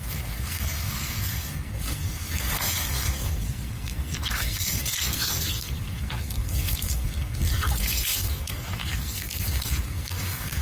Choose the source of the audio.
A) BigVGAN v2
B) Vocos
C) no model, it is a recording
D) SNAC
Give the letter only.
D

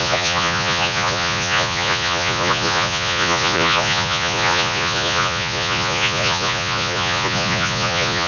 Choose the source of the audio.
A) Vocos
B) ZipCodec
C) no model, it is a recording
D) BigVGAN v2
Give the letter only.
A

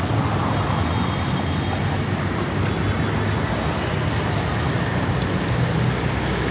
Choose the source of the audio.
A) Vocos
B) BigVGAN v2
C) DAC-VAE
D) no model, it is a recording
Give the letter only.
D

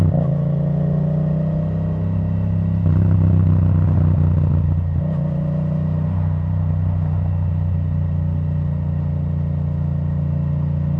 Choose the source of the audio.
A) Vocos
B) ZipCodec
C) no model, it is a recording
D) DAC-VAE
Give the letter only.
C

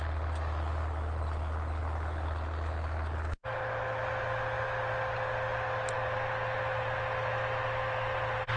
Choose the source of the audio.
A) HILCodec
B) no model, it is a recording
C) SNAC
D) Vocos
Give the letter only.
B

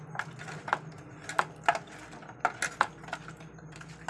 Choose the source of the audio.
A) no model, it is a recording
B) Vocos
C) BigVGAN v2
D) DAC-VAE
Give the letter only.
A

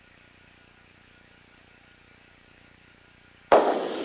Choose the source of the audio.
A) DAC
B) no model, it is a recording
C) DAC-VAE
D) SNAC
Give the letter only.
A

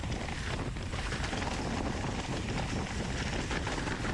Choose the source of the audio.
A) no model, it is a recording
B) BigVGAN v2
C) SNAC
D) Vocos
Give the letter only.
A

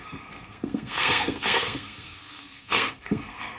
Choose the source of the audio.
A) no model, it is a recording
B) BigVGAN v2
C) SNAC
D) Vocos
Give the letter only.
C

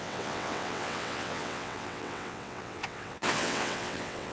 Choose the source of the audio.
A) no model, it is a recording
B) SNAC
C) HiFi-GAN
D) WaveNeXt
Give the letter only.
D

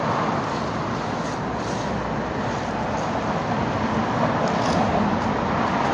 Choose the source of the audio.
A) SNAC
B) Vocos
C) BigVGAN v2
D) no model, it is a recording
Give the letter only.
D